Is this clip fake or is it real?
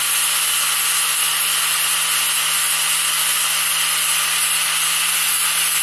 real